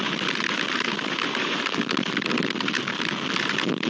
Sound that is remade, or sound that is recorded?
recorded